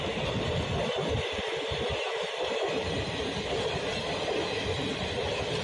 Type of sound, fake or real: real